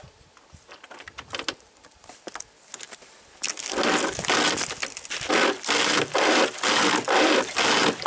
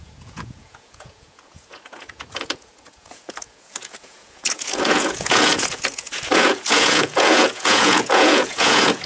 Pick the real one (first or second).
first